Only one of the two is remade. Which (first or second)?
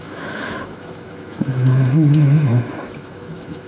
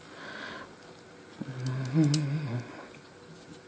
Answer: first